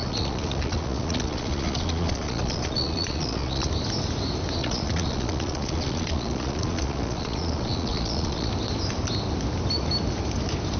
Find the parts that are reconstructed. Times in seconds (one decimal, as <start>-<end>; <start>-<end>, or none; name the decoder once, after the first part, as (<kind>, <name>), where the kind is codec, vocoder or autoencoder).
0.0-3.7 (vocoder, Vocos); 4.6-8.5